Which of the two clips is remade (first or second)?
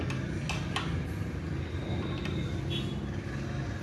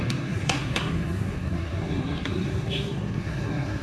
second